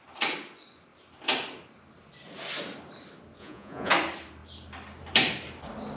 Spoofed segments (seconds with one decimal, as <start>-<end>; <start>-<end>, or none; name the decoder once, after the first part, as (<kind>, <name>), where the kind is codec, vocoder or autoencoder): 3.4-3.9 (vocoder, Vocos)